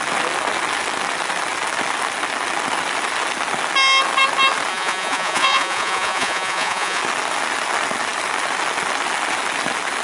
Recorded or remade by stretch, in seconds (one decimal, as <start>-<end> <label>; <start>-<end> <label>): 0.0-4.7 recorded; 4.7-7.0 remade; 7.0-10.0 recorded